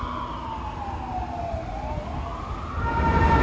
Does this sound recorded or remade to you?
recorded